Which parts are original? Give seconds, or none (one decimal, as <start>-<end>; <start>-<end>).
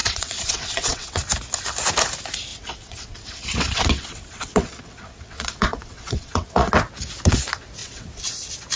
1.2-2.5; 6.7-7.8; 8.3-8.8